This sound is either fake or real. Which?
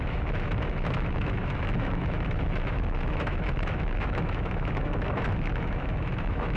fake